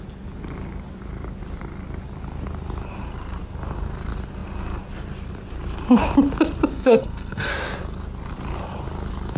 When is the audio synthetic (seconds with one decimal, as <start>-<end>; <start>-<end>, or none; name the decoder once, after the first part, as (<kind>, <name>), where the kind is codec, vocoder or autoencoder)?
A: 6.7-7.5 (codec, SNAC)